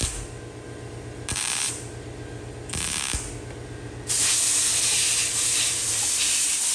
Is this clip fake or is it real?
real